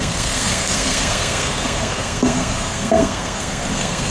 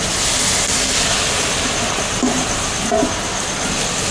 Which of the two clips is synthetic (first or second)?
first